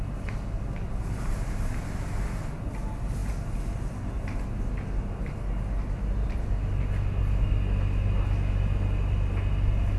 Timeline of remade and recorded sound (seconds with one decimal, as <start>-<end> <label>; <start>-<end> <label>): 0.0-10.0 recorded